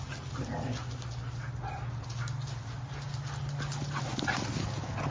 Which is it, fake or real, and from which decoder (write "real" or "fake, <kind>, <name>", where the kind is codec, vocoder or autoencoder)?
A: real